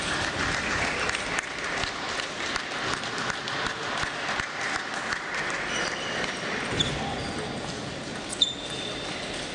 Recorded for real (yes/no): yes